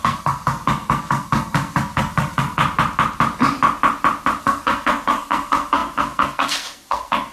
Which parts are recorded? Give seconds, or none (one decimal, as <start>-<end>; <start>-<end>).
2.6-4.4

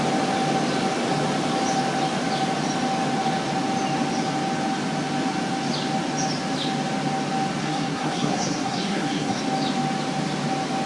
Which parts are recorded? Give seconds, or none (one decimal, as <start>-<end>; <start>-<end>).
0.0-7.6; 9.4-10.9

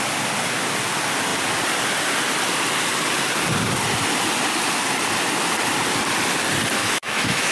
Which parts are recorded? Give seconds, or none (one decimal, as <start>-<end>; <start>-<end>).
0.0-6.8

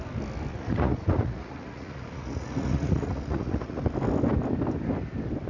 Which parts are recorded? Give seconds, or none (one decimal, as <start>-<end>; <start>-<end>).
0.0-0.5; 3.8-5.5

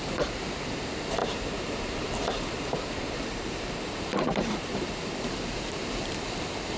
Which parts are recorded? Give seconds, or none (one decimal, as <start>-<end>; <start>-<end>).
none